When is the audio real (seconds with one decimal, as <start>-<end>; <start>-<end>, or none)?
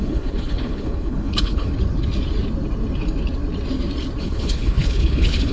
1.7-4.2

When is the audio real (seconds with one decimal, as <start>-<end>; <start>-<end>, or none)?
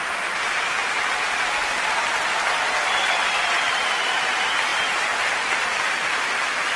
0.0-6.8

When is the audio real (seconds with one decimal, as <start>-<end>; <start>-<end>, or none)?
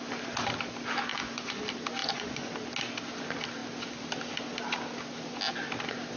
0.0-1.1; 1.6-2.0; 2.5-6.2